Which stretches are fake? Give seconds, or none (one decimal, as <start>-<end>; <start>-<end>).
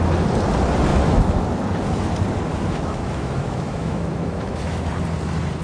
0.9-1.4; 2.5-4.9